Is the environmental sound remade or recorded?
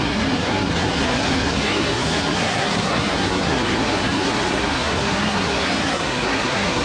remade